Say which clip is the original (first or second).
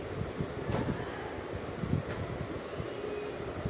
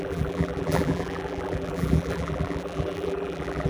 first